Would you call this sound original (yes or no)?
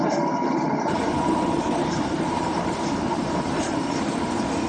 no